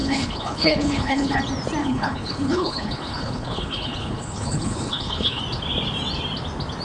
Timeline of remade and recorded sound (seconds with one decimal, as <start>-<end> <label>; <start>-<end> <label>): 0.0-1.4 remade; 1.4-1.8 recorded; 1.8-5.4 remade; 5.4-6.8 recorded